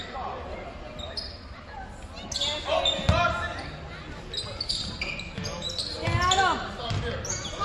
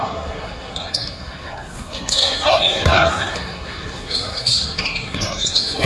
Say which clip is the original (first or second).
first